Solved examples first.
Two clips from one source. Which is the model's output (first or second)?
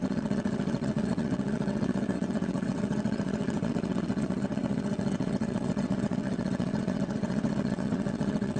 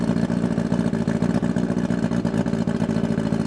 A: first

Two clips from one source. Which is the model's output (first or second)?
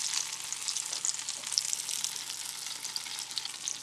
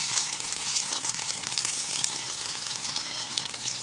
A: second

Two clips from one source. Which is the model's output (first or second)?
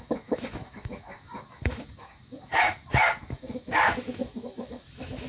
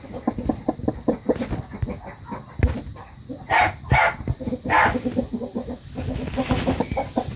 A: first